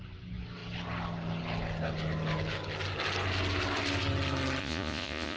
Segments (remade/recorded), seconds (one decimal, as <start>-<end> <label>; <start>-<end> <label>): 0.0-4.6 recorded; 4.6-5.4 remade